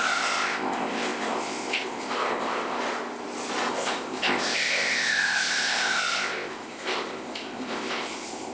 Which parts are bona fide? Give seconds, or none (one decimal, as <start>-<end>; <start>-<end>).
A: 2.8-3.7